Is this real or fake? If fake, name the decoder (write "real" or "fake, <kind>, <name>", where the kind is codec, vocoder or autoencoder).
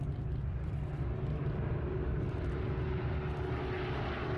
real